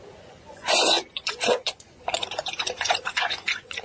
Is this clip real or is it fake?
fake